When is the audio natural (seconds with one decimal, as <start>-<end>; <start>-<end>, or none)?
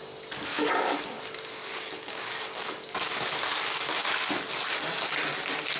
0.0-0.5; 1.2-1.6; 2.7-5.8